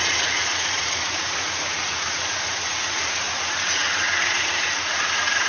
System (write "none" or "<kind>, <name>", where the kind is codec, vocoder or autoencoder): vocoder, Vocos